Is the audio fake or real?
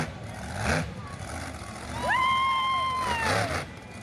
real